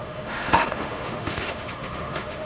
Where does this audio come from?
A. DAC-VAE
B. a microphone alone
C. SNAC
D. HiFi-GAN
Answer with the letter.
A